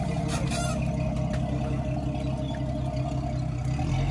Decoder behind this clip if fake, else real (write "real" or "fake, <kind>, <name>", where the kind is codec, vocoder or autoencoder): real